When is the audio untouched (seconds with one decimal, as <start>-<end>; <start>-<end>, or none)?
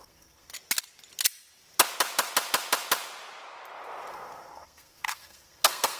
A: 0.5-4.1